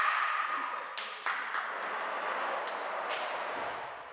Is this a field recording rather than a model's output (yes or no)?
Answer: yes